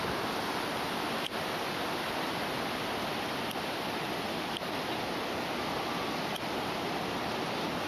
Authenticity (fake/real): real